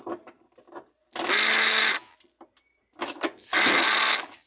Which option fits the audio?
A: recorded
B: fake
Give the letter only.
A